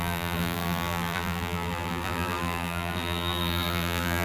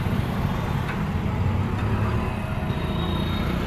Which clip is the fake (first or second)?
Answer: first